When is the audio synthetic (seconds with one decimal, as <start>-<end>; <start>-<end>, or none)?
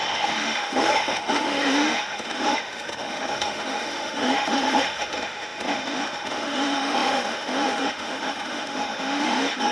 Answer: 0.0-9.7